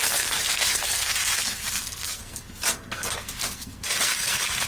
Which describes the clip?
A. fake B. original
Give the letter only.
A